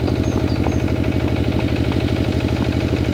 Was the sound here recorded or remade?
recorded